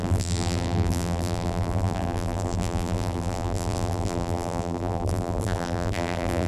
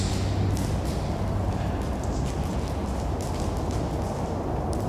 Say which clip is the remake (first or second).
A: first